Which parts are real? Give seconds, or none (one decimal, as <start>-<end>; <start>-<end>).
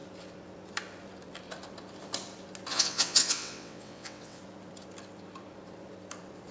0.0-2.7; 4.4-6.5